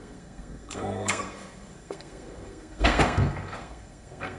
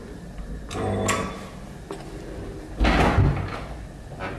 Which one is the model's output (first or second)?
first